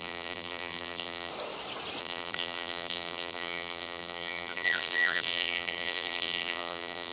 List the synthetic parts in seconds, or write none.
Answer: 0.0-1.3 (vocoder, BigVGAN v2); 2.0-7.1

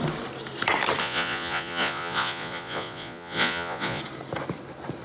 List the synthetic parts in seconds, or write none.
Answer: 1.0-4.0 (vocoder, Vocos)

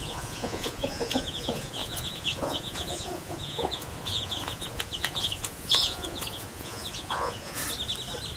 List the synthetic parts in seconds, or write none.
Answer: 0.0-7.6 (vocoder, Vocos)

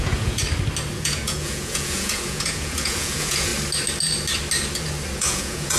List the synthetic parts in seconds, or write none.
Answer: 0.0-0.4 (vocoder, Vocos); 0.9-3.5; 5.1-5.8

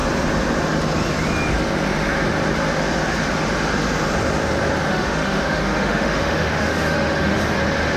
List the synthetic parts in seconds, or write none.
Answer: 4.9-7.4 (autoencoder, DAC-VAE)

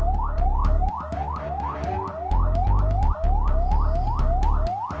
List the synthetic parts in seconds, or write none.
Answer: none

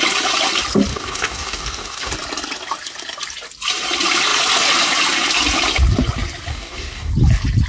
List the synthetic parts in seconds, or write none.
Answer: 0.9-2.1 (codec, DAC); 6.5-7.1